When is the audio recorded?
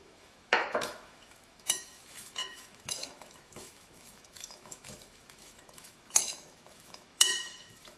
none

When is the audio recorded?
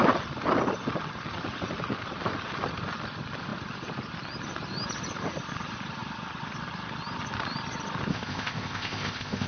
0.0-8.1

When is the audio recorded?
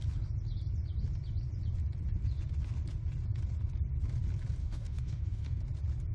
0.0-4.6; 5.6-6.1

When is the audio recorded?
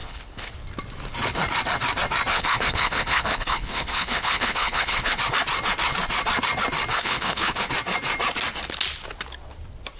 0.5-2.3; 5.2-6.9; 7.7-10.0